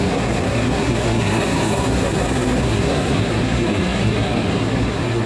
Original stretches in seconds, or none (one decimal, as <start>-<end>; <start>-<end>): none